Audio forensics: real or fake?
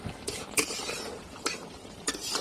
fake